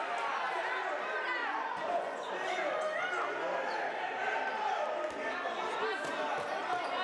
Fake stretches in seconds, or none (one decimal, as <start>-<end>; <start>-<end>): 1.4-2.3